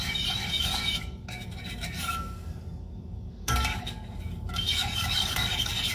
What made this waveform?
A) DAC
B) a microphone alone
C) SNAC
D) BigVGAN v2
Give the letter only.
A